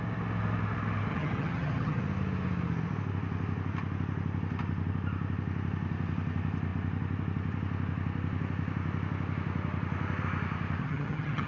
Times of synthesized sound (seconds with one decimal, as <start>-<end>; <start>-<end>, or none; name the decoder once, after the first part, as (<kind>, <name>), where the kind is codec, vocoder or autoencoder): 1.1-2.0 (vocoder, HiFi-GAN); 10.8-11.5